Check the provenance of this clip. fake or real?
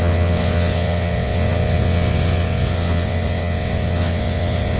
fake